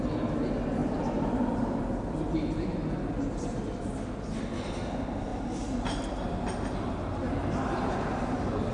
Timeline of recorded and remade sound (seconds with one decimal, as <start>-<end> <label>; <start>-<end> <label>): 0.0-0.8 recorded; 0.8-1.8 remade; 1.8-5.3 recorded; 5.3-6.9 remade; 6.9-7.4 recorded; 7.4-8.7 remade